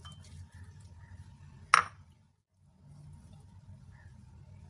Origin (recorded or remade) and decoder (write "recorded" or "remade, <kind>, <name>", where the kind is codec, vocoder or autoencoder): recorded